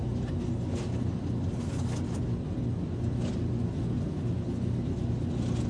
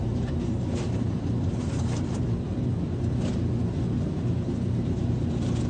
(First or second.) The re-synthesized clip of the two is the second